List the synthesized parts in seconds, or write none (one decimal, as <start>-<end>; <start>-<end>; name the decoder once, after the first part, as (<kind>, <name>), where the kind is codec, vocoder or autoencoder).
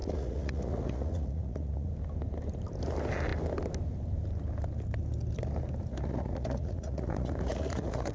0.0-1.9 (vocoder, Vocos); 5.9-8.1